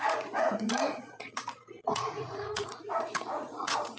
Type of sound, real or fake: fake